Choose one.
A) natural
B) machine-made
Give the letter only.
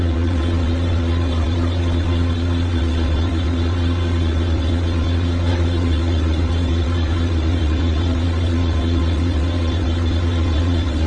B